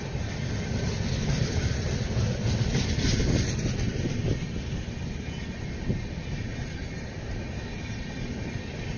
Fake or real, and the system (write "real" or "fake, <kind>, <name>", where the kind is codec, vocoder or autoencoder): real